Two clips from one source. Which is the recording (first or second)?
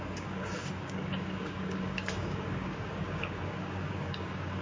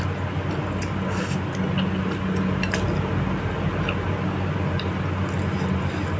second